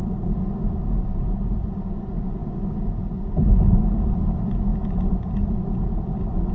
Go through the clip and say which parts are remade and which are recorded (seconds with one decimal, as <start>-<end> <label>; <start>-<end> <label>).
0.0-6.5 recorded